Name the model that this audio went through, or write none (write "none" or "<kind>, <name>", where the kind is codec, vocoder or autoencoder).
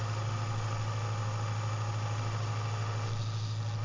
none